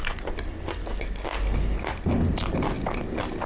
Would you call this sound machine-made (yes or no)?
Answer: no